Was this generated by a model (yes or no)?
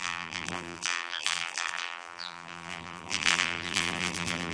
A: yes